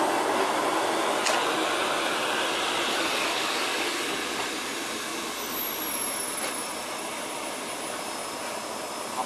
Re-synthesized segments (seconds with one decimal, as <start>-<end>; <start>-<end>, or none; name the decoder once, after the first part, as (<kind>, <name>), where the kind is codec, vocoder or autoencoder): 2.9-4.1 (codec, DAC)